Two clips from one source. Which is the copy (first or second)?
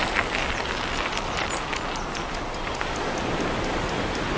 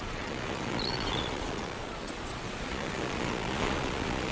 second